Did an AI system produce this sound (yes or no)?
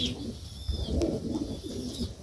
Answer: no